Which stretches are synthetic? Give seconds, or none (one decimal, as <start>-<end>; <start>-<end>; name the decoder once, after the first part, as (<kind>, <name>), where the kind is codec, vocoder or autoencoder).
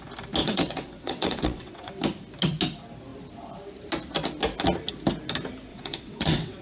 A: 0.4-1.9 (vocoder, WaveNeXt); 5.7-6.6